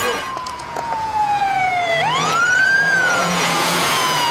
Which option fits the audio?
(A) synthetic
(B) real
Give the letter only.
A